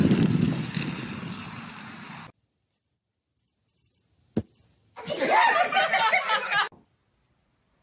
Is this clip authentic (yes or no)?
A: yes